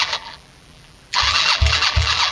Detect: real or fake fake